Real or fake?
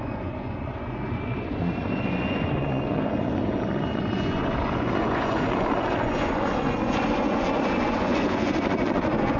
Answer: fake